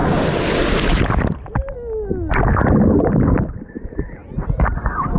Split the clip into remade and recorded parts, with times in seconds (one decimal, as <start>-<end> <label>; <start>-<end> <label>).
0.0-5.2 recorded